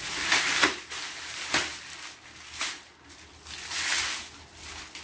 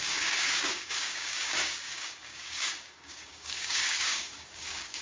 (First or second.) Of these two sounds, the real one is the first